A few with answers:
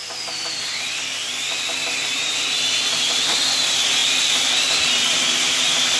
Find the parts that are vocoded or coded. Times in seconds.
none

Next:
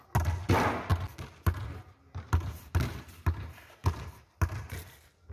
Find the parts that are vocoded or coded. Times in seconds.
none

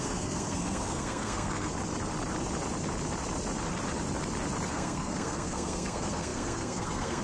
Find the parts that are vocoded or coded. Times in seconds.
0.0-1.7 (codec, SNAC); 4.7-7.2

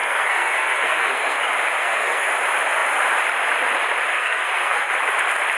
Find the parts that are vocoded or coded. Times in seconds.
0.0-1.4 (codec, SNAC); 1.8-2.3; 4.1-4.9

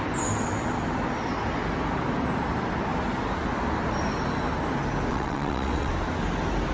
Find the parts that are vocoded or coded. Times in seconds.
5.1-5.9 (vocoder, WaveNeXt)